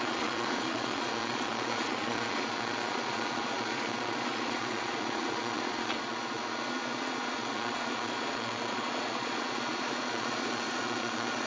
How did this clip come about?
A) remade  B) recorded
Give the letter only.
A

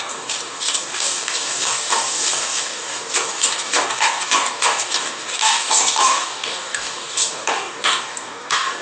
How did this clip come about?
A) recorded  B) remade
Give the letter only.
B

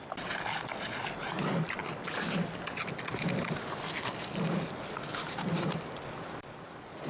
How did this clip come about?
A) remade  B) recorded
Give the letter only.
B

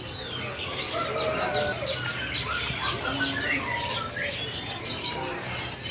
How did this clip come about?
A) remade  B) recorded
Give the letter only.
B